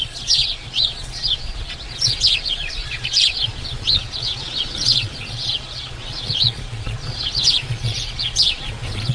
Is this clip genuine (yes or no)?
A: no